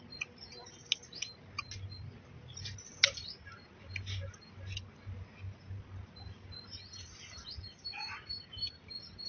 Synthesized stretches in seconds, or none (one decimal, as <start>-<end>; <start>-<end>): none